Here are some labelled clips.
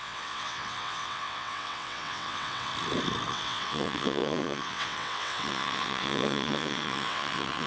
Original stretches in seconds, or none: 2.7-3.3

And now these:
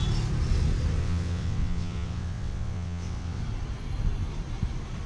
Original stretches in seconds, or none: 0.0-1.0; 3.4-5.1

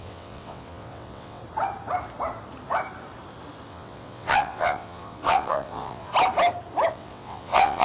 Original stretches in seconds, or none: 1.4-3.7; 6.1-6.9